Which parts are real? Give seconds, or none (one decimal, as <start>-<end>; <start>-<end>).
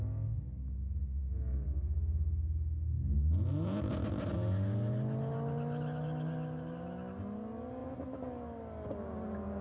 0.0-9.6